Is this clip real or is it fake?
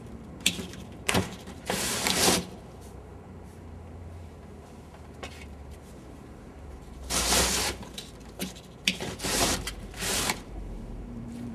fake